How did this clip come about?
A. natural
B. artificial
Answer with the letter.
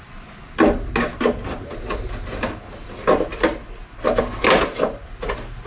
A